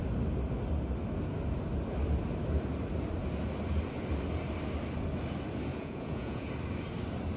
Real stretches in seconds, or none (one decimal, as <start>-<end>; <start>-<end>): 0.0-5.7; 6.5-7.4